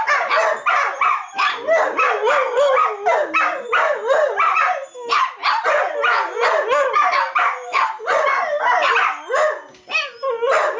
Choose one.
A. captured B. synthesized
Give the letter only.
A